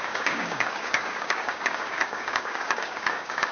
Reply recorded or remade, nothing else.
remade